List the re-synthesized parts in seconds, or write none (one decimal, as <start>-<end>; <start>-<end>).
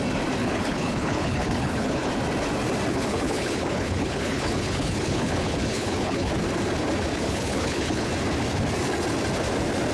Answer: 0.4-2.1; 2.9-6.3; 7.1-8.1